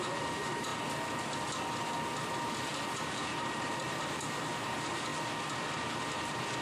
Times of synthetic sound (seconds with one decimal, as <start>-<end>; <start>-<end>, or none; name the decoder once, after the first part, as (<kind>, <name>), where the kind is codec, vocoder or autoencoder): 0.0-0.7 (vocoder, BigVGAN v2); 2.3-5.1